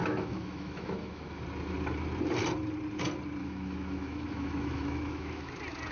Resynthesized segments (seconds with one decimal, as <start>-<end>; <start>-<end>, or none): 0.0-1.4; 3.4-5.5